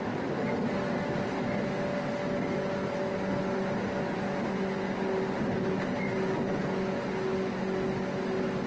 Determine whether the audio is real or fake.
real